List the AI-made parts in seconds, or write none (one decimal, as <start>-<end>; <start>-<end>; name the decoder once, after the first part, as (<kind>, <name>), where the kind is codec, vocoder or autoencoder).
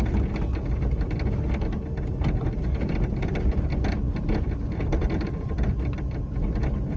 2.1-6.3 (vocoder, BigVGAN v2)